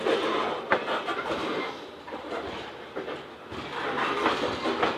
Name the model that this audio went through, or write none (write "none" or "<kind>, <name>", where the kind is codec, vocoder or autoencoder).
none